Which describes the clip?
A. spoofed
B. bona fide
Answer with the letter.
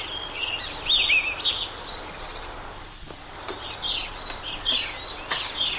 B